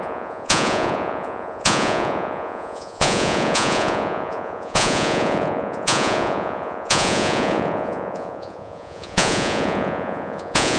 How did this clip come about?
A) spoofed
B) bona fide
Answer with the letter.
A